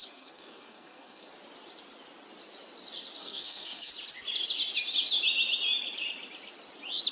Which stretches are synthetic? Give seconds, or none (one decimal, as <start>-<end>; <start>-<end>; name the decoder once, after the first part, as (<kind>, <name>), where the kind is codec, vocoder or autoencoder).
0.0-1.3 (codec, SNAC); 3.2-3.9